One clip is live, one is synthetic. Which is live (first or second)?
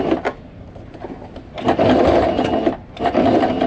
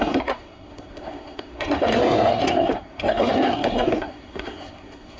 first